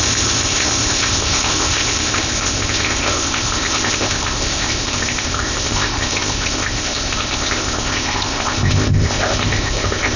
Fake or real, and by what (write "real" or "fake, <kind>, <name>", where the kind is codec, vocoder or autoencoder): fake, codec, ZipCodec